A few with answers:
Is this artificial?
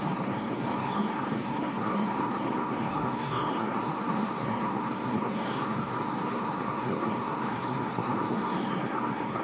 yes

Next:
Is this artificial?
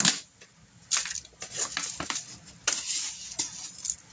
no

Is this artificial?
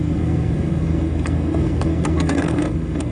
yes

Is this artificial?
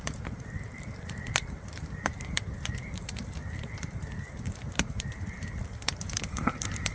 yes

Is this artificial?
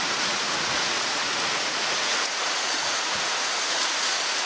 yes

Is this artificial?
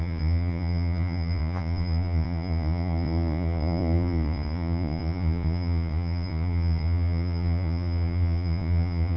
yes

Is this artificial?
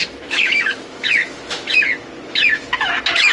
yes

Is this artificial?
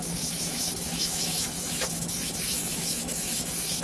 yes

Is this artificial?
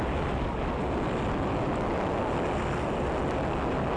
no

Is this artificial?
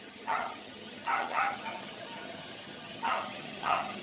yes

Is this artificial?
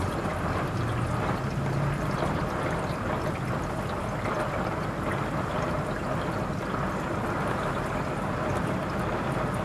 yes